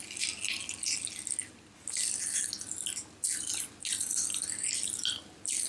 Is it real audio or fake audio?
real